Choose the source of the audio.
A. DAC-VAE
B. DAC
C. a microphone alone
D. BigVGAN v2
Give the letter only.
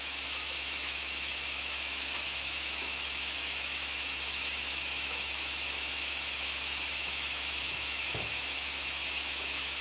A